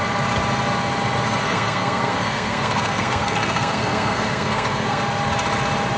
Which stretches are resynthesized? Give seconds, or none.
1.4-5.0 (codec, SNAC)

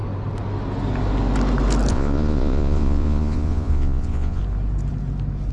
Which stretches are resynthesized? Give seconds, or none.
1.9-4.4 (vocoder, Vocos)